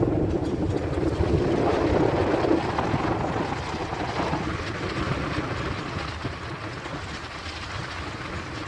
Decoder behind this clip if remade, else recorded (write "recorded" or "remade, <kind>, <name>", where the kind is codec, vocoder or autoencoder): recorded